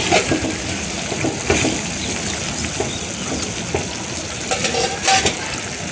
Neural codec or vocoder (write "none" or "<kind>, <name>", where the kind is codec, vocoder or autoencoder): none